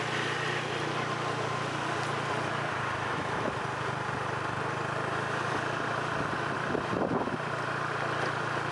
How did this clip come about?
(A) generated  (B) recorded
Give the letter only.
A